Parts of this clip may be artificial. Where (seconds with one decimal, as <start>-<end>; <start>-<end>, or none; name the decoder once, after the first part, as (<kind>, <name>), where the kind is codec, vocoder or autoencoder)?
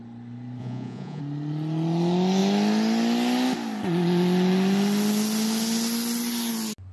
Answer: 0.6-1.2 (vocoder, Vocos)